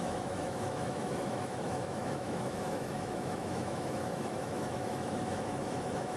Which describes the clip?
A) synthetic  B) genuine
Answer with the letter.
A